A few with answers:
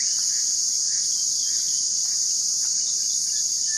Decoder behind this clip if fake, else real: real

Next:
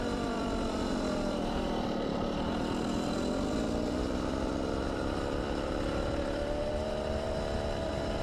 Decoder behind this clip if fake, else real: fake, vocoder, BigVGAN v2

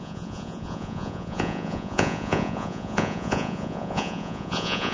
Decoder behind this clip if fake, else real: fake, vocoder, Vocos